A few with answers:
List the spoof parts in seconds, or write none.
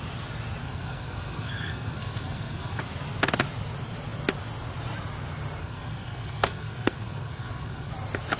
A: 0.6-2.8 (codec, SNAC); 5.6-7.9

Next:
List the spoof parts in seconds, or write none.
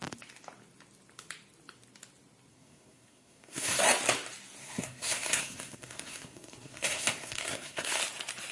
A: 2.5-3.8 (codec, SNAC); 4.6-8.0